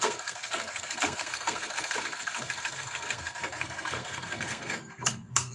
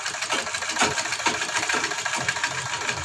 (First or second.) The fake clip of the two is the first